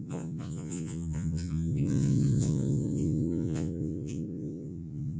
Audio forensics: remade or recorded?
remade